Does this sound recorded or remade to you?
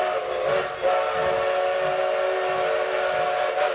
recorded